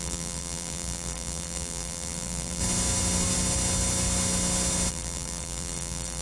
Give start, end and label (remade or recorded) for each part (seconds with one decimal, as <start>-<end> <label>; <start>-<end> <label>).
0.0-2.6 remade; 2.6-4.9 recorded; 4.9-6.2 remade